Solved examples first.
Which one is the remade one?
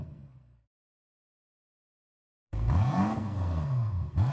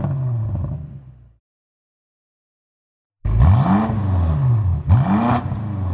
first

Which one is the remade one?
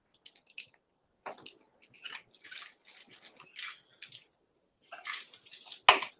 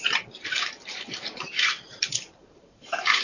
second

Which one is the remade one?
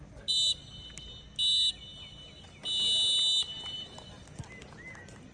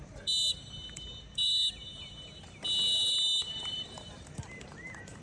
second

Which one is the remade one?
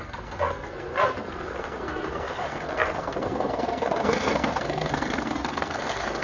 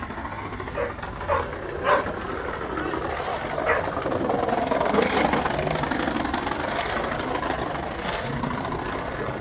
first